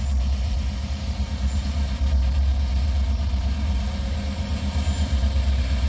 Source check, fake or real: fake